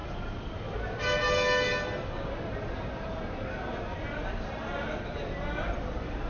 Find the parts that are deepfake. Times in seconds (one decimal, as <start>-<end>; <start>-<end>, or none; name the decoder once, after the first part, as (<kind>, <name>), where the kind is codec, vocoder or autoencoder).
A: none